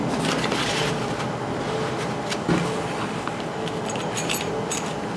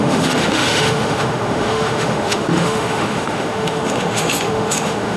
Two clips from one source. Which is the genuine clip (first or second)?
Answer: first